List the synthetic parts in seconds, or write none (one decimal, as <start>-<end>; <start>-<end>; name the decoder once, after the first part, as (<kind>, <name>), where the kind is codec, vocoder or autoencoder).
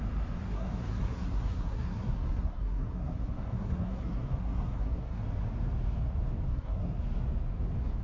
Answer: 0.4-5.2 (codec, SNAC); 6.5-7.0